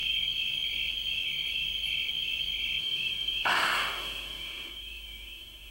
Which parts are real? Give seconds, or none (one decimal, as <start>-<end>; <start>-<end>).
0.0-2.8